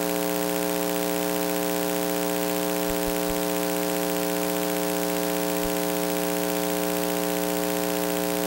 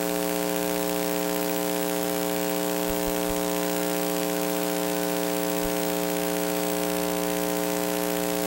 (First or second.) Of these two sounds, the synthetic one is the second